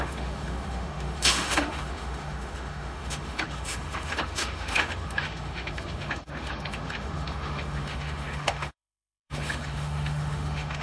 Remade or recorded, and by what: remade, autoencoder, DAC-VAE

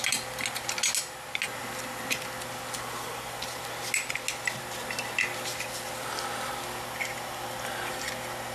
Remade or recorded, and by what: recorded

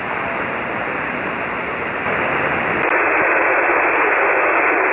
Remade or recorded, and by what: recorded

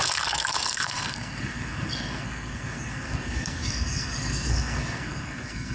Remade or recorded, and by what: remade, codec, SNAC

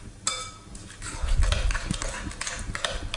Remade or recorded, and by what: recorded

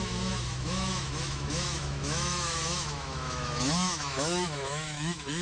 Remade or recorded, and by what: remade, autoencoder, DAC-VAE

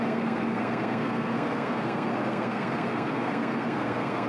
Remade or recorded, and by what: remade, codec, SNAC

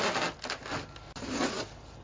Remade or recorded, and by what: recorded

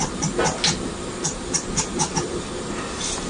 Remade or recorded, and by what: recorded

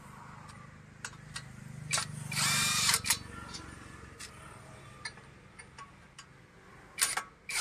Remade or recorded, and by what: recorded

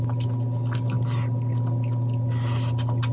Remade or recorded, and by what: recorded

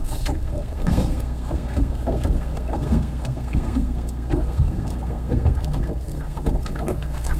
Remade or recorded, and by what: remade, codec, SNAC